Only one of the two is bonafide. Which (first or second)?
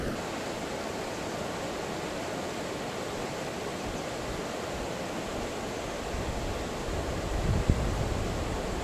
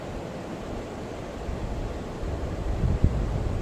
first